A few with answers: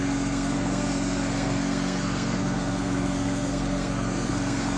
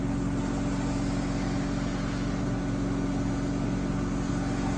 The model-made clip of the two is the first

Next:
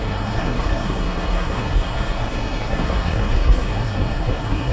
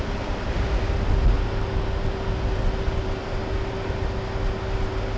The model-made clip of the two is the first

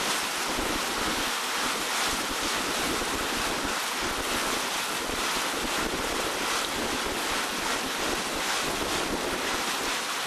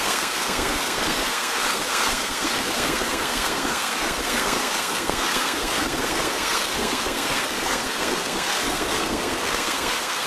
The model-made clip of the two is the second